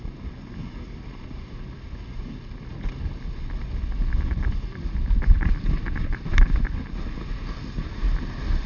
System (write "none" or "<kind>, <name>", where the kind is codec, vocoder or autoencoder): none